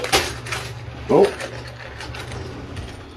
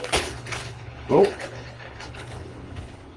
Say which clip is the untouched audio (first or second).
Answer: first